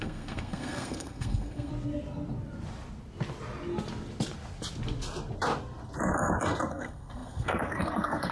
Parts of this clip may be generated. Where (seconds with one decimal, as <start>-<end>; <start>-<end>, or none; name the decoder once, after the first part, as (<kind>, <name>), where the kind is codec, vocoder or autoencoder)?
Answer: 0.0-1.7 (codec, SNAC); 6.7-8.3